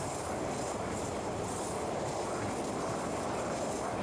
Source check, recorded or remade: remade